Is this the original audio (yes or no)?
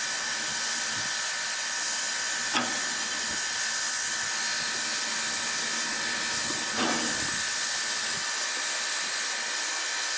yes